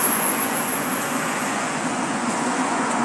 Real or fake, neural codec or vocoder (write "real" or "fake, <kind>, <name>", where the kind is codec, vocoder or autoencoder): fake, vocoder, Vocos